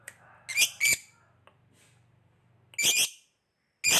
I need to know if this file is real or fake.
real